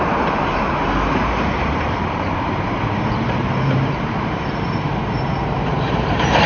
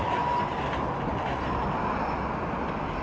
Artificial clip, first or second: first